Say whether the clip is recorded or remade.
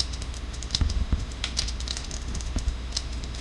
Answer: remade